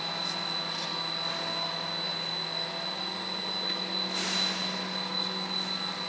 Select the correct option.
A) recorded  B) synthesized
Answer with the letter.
A